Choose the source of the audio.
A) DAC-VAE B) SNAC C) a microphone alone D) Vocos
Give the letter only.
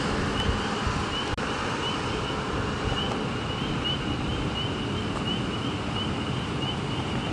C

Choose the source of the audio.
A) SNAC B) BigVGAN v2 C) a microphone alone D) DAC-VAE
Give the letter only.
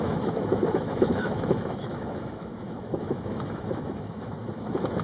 D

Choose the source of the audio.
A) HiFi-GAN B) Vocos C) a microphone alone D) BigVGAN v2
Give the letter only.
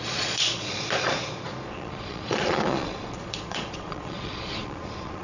B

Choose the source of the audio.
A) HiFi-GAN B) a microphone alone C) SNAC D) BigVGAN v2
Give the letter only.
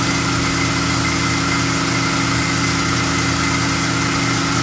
B